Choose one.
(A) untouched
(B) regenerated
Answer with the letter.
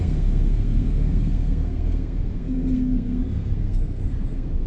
B